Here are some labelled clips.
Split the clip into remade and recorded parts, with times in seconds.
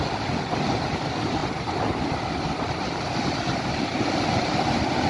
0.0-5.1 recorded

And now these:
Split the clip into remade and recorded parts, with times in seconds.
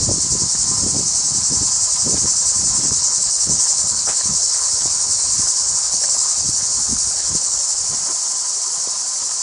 0.0-3.0 recorded; 3.0-7.8 remade; 7.8-9.4 recorded